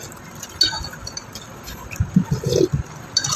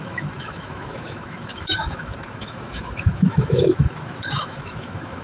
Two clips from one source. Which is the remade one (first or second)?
second